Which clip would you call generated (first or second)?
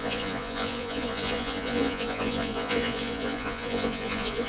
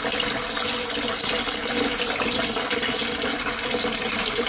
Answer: first